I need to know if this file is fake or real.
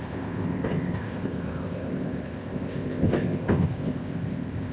fake